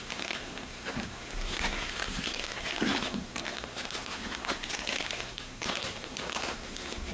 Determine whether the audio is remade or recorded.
remade